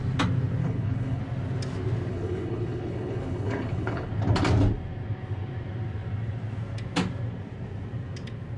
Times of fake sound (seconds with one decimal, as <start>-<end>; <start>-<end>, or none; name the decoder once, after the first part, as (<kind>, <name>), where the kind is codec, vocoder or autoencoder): 0.6-1.2 (codec, HILCodec); 2.1-4.1